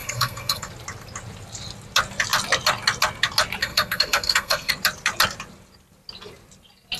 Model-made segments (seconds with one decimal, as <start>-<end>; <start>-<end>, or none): 0.0-0.7; 3.6-4.7